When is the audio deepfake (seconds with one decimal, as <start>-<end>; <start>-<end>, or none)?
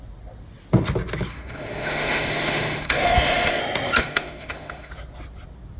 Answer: 1.3-3.6; 4.0-4.9